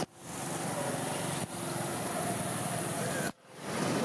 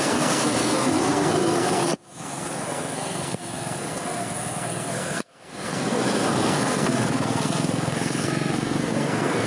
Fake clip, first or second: second